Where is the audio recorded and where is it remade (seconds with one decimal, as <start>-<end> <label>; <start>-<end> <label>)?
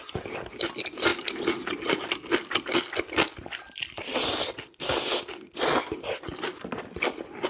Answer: 0.0-7.5 recorded